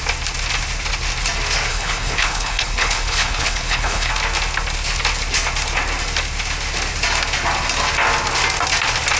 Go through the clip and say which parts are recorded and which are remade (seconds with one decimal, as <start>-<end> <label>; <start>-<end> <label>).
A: 0.0-1.7 recorded; 1.7-4.1 remade; 4.1-9.2 recorded